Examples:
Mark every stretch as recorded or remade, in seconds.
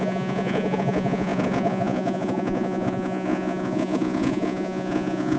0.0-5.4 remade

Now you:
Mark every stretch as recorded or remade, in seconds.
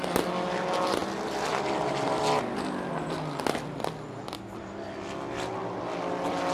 0.0-6.5 recorded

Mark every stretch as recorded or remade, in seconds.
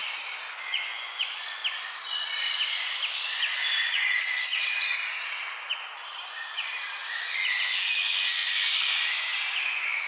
0.0-0.5 recorded; 0.5-1.6 remade; 1.6-3.9 recorded; 3.9-4.5 remade; 4.5-7.2 recorded; 7.2-10.1 remade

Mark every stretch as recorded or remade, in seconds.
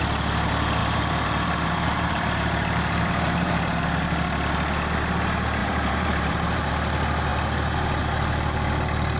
0.0-0.8 recorded; 0.8-3.8 remade; 3.8-5.6 recorded; 5.6-6.7 remade; 6.7-9.2 recorded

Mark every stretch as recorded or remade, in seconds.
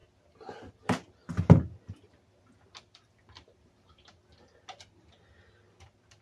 0.0-6.2 recorded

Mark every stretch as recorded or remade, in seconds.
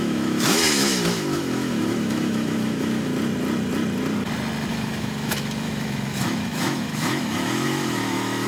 0.0-3.1 remade; 3.1-4.7 recorded; 4.7-8.5 remade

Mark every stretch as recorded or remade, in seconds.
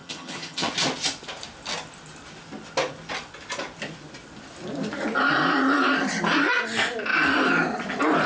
0.0-0.7 remade; 0.7-8.3 recorded